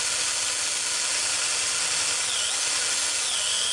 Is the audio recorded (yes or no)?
yes